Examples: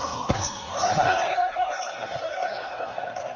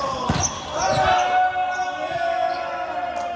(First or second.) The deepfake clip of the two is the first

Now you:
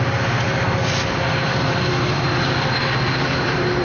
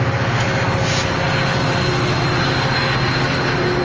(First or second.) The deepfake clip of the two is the first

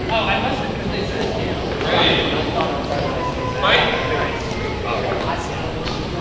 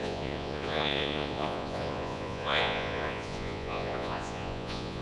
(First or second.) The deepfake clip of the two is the second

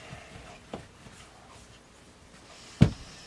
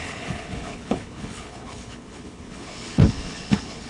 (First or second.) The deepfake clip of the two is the second